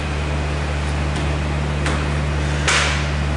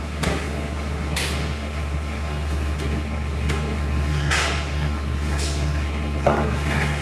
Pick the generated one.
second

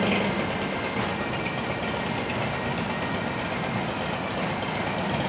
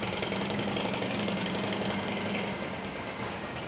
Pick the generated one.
second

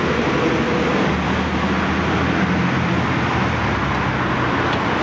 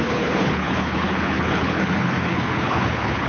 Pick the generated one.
second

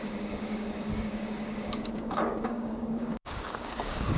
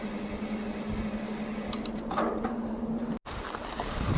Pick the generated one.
first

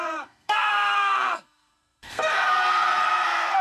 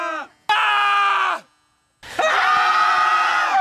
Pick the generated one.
first